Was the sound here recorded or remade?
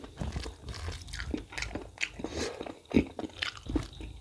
recorded